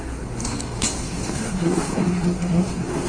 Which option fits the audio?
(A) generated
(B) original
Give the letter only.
A